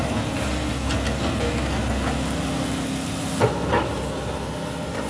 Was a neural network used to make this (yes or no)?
no